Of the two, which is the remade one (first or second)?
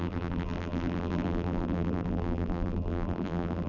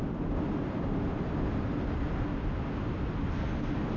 first